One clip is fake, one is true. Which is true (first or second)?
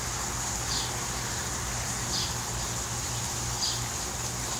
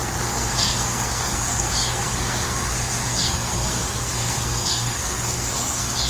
first